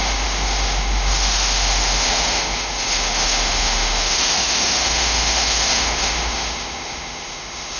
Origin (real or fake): fake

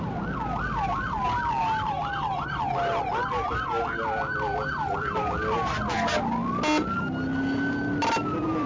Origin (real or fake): real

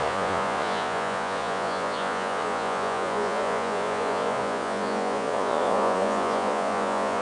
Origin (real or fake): fake